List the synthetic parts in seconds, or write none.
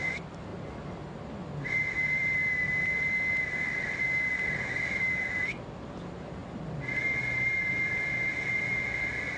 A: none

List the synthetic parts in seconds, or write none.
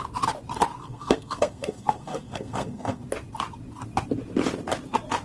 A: 0.8-3.0 (codec, SNAC)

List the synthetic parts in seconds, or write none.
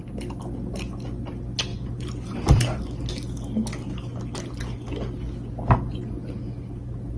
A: 1.7-3.1 (vocoder, BigVGAN v2)